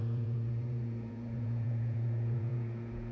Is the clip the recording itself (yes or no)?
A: no